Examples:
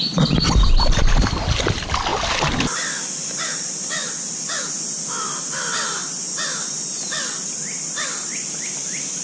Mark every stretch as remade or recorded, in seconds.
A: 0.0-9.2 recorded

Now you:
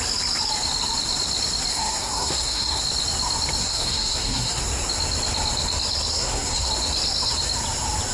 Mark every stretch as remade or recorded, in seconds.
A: 0.0-1.7 recorded; 1.7-2.8 remade; 2.8-3.6 recorded; 3.6-4.6 remade; 4.6-6.1 recorded; 6.1-6.7 remade; 6.7-8.1 recorded

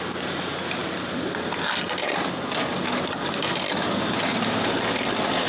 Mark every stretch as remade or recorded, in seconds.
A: 0.0-5.5 recorded

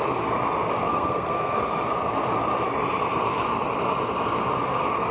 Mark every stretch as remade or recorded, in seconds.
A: 0.0-0.9 recorded; 0.9-1.6 remade; 1.6-5.1 recorded

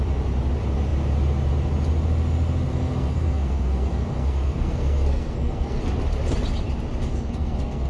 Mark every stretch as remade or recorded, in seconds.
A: 0.0-2.7 recorded; 2.7-5.8 remade; 5.8-7.1 recorded; 7.1-7.9 remade

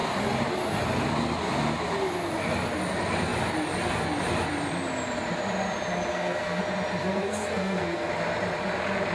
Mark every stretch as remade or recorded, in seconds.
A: 0.0-6.1 recorded; 6.1-6.6 remade; 6.6-7.0 recorded; 7.0-8.1 remade; 8.1-9.1 recorded